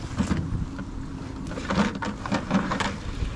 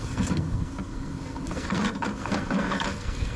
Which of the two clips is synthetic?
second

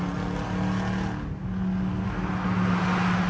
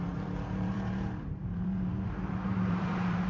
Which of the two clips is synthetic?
second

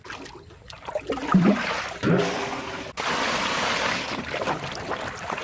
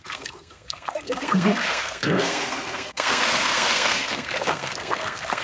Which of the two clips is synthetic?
second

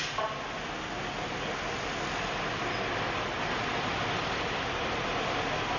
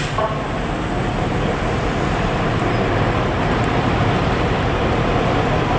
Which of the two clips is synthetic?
second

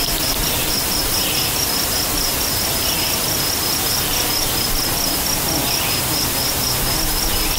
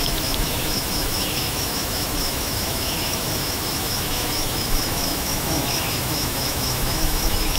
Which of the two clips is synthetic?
second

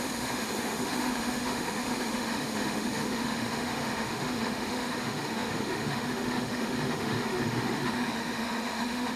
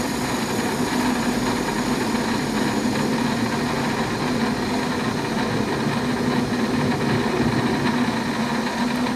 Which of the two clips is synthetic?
first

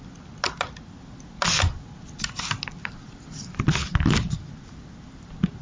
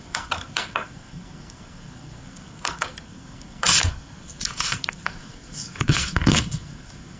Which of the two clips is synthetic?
second